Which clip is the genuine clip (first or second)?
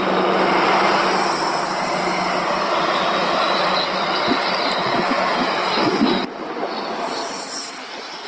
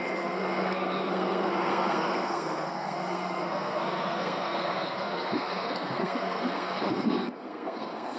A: first